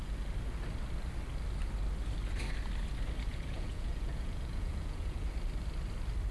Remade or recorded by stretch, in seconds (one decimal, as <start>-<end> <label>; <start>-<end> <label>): 0.0-3.3 recorded; 3.3-5.3 remade; 5.3-6.3 recorded